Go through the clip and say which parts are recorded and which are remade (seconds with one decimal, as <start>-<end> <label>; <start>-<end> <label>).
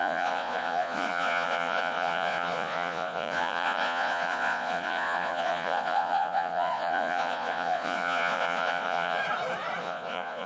0.0-9.2 remade; 9.2-9.8 recorded; 9.8-10.5 remade